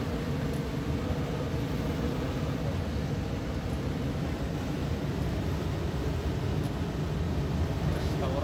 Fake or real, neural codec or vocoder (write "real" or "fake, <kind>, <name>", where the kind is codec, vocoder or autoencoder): real